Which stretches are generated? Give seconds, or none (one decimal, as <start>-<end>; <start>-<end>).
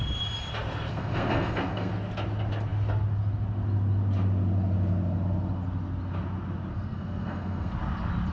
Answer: 0.9-1.9; 6.7-7.7